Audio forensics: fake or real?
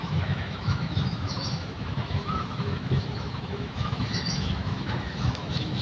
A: fake